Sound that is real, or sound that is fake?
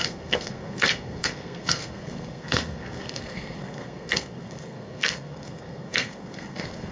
fake